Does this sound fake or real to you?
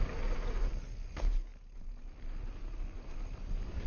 real